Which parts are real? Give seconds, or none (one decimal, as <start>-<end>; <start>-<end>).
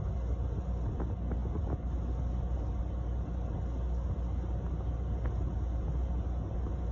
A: 0.0-6.9